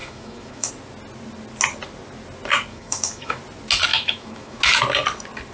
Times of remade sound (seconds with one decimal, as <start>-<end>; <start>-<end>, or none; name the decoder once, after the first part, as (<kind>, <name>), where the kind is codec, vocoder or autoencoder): 0.0-0.7 (autoencoder, DAC-VAE); 2.7-3.4; 3.9-4.6